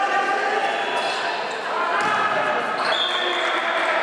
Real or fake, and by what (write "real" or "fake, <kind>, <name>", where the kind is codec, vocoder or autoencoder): real